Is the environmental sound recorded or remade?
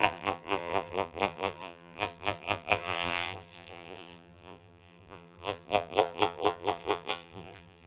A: remade